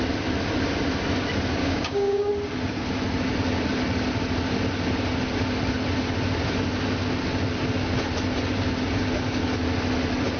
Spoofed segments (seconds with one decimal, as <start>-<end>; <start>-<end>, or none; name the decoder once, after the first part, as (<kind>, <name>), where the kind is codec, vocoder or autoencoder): 1.6-2.3 (codec, DAC)